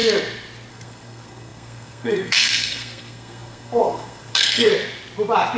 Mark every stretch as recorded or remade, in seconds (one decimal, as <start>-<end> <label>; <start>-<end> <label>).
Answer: 0.0-0.7 recorded; 0.7-4.7 remade; 4.7-5.6 recorded